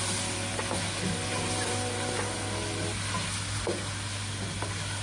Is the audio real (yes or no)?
yes